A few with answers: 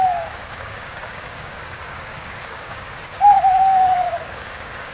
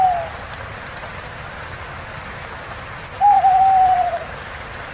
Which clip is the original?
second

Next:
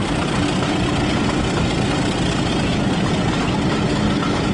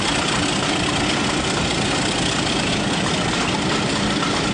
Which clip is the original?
first